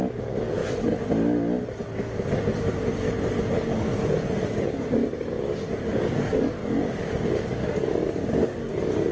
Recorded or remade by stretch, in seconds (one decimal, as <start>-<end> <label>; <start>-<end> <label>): 0.0-0.6 remade; 0.6-3.5 recorded; 3.5-3.9 remade; 3.9-4.4 recorded; 4.4-5.0 remade; 5.0-5.7 recorded; 5.7-9.1 remade